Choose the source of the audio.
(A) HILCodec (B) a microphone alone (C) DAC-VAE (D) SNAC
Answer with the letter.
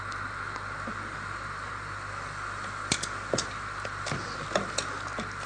B